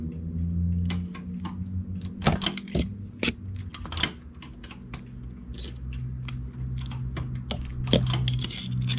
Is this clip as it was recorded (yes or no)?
yes